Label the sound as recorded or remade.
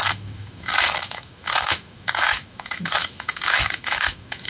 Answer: remade